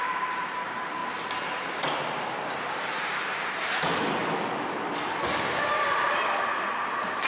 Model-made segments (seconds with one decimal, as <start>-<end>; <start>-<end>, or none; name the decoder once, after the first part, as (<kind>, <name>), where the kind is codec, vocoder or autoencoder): 0.0-1.0 (vocoder, BigVGAN v2); 2.8-4.2